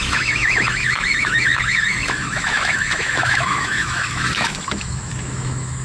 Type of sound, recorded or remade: remade